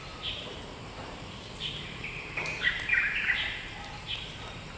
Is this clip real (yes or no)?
no